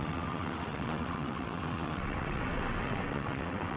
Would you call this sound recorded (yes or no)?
no